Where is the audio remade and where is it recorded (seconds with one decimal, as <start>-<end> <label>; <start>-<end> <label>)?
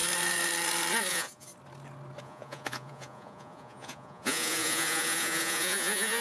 0.0-1.1 recorded; 1.1-1.5 remade; 1.5-2.2 recorded; 2.2-6.2 remade